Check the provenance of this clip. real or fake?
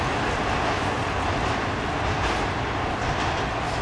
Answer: real